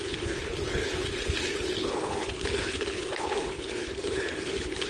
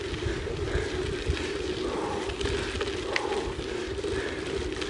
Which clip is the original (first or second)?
second